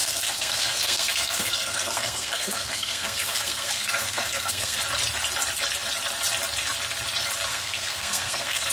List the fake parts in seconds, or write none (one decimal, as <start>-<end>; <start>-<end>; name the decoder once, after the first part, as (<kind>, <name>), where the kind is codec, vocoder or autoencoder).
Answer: 0.0-4.8 (codec, SNAC); 7.5-8.7